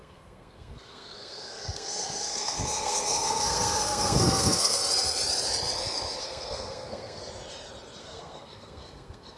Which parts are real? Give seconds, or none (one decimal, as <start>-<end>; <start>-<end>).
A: 4.8-6.2; 7.2-8.0